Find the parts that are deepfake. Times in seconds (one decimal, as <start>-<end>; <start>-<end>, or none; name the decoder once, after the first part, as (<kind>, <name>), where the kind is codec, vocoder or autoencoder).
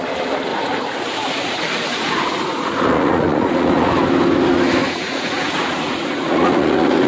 0.5-3.9 (vocoder, Vocos); 4.8-7.1